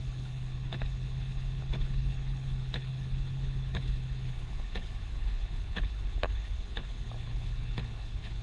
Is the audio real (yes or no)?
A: no